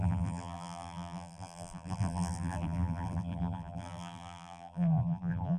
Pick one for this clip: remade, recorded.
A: remade